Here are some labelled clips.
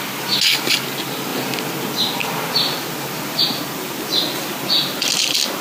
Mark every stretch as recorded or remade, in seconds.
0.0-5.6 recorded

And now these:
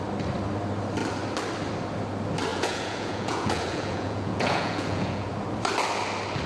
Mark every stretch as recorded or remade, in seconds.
0.0-2.5 recorded; 2.5-5.3 remade; 5.3-6.5 recorded

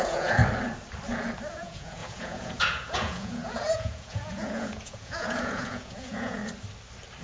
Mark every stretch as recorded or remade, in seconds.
0.0-0.4 remade; 0.4-1.5 recorded; 1.5-6.4 remade; 6.4-7.2 recorded

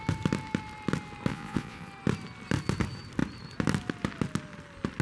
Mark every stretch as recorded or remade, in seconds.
0.0-1.3 recorded; 1.3-1.9 remade; 1.9-5.0 recorded

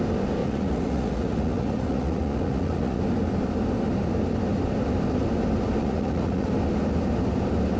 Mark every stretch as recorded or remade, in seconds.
0.0-0.4 recorded; 0.4-3.0 remade; 3.0-5.8 recorded; 5.8-6.5 remade; 6.5-7.8 recorded

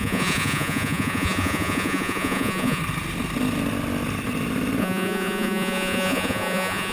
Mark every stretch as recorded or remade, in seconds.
0.0-2.8 remade; 2.8-4.8 recorded; 4.8-6.9 remade

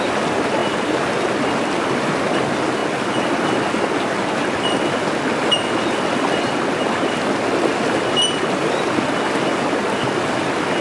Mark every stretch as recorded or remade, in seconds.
0.0-10.8 recorded

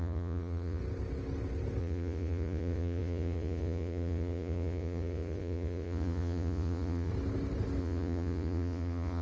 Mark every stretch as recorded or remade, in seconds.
0.0-0.8 remade; 0.8-1.8 recorded; 1.8-7.1 remade; 7.1-7.8 recorded; 7.8-9.2 remade